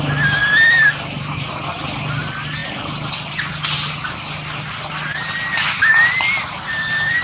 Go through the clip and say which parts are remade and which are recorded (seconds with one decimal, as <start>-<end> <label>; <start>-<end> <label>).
0.0-7.2 recorded